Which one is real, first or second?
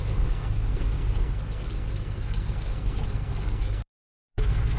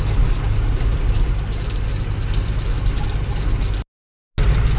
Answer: second